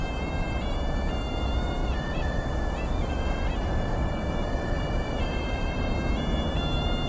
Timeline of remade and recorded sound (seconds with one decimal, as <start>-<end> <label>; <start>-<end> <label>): 0.0-1.8 recorded; 1.8-5.9 remade; 5.9-7.1 recorded